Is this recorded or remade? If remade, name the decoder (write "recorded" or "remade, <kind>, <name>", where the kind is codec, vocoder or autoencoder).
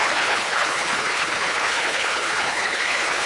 remade, codec, HILCodec